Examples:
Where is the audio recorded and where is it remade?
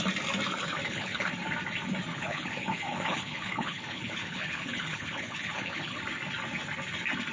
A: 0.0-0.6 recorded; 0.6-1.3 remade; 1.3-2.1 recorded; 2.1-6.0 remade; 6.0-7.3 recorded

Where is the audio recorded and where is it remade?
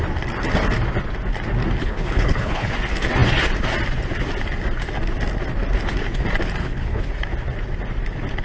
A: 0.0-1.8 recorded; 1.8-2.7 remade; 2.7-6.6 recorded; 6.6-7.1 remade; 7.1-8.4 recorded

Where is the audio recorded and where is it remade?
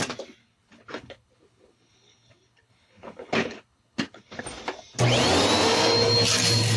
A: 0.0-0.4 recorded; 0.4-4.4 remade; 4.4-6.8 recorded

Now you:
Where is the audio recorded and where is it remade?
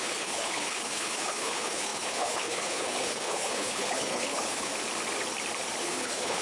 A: 0.0-4.7 remade; 4.7-5.8 recorded; 5.8-6.4 remade